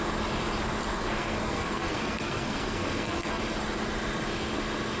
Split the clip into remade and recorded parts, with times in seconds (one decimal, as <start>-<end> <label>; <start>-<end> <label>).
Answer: 0.0-0.9 recorded; 0.9-3.4 remade; 3.4-5.0 recorded